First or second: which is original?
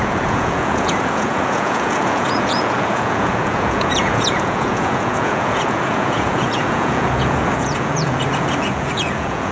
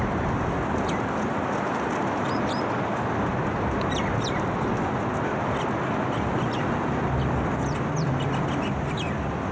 second